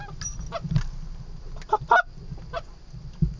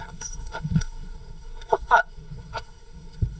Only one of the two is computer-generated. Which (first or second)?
second